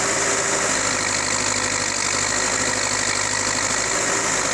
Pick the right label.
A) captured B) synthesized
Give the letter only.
A